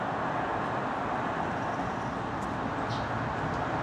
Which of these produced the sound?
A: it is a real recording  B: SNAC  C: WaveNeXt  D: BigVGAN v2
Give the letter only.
A